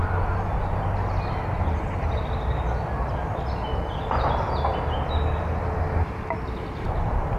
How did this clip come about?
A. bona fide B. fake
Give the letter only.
A